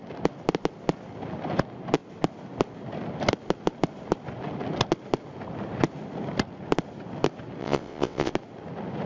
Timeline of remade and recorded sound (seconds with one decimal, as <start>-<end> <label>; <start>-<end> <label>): 0.0-7.6 recorded; 7.6-8.3 remade; 8.3-9.1 recorded